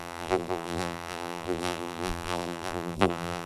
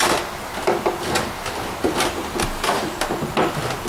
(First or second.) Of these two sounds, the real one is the second